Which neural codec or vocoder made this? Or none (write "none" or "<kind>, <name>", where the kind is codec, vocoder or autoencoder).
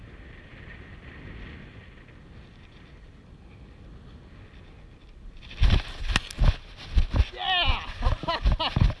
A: none